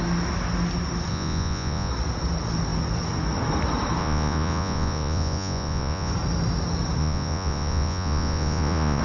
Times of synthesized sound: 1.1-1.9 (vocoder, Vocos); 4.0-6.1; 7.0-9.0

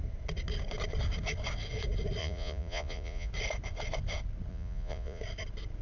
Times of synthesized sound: 2.2-3.3 (vocoder, Vocos); 4.5-5.2

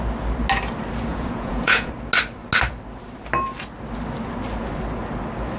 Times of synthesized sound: 1.1-1.9 (vocoder, Vocos)